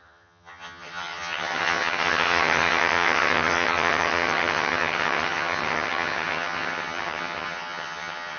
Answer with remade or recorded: remade